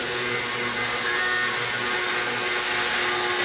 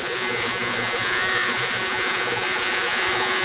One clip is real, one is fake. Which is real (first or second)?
first